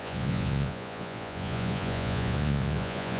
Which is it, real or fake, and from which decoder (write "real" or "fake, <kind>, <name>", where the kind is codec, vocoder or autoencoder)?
fake, vocoder, Vocos